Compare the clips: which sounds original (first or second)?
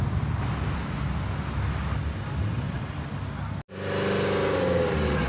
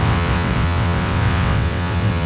first